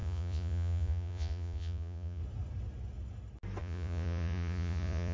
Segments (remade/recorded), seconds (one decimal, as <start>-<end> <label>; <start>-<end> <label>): 0.0-2.2 remade; 2.2-3.6 recorded; 3.6-5.1 remade